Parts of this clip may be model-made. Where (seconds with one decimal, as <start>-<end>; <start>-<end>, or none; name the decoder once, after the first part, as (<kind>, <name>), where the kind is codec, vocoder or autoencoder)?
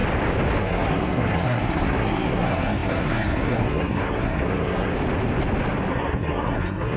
0.6-4.9 (codec, SNAC); 5.9-7.0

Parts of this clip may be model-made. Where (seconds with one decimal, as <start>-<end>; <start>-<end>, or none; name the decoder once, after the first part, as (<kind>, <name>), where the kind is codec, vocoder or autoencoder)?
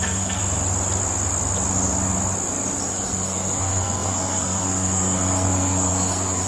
0.0-0.4 (codec, SNAC); 2.9-6.5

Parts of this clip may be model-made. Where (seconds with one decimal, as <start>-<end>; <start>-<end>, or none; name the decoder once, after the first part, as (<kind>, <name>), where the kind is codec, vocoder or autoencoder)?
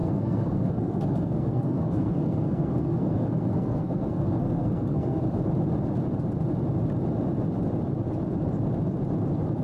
0.0-5.2 (codec, SNAC)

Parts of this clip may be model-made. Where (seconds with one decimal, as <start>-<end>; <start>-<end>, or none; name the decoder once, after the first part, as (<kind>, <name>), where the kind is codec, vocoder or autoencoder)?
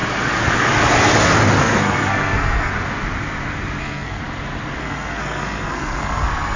1.6-2.7 (codec, SNAC); 3.8-4.2; 4.8-6.6